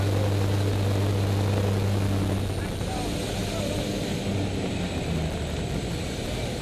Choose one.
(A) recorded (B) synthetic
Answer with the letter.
A